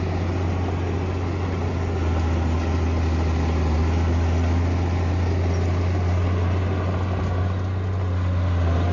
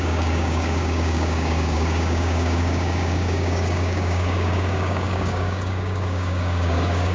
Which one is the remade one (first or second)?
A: second